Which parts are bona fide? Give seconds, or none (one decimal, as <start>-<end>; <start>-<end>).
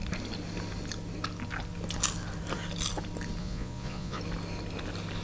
0.0-3.4; 4.2-5.2